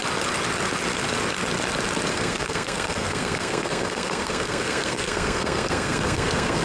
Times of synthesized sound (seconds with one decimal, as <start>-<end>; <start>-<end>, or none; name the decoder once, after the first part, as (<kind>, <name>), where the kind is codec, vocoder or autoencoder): 2.1-6.6 (codec, SNAC)